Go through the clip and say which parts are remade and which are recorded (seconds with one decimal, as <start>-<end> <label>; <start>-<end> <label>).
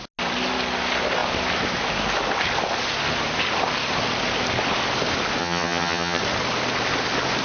0.0-5.4 recorded; 5.4-6.2 remade; 6.2-7.4 recorded